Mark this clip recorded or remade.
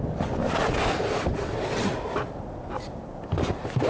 recorded